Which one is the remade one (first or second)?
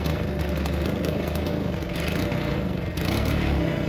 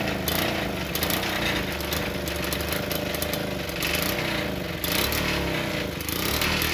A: first